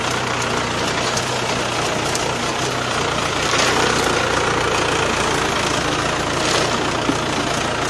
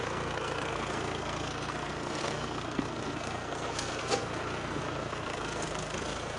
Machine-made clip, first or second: second